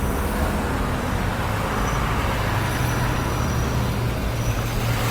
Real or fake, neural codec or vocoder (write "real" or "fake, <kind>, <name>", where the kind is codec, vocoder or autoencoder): real